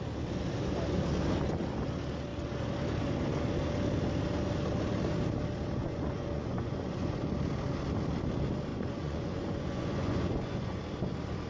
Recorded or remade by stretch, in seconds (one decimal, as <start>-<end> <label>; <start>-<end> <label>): 0.0-5.8 recorded; 5.8-7.2 remade; 7.2-8.7 recorded; 8.7-10.8 remade; 10.8-11.5 recorded